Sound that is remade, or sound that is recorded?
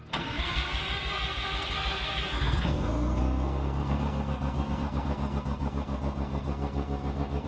remade